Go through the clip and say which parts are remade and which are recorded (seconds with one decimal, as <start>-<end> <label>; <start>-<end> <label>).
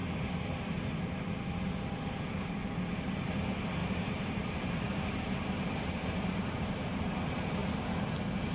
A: 0.0-3.8 recorded; 3.8-7.0 remade; 7.0-8.5 recorded